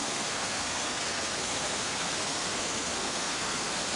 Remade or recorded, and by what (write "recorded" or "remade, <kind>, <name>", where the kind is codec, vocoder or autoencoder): remade, codec, SNAC